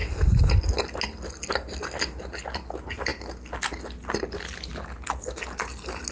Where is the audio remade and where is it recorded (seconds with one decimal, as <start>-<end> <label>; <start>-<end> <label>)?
0.0-6.1 recorded